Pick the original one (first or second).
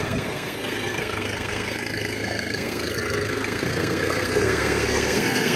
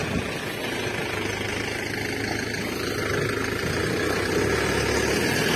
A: second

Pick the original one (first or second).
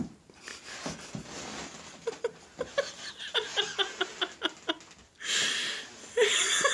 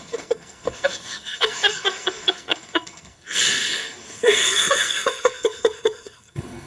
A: first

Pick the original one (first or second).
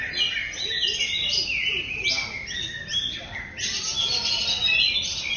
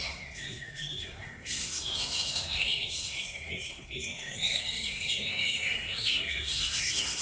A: first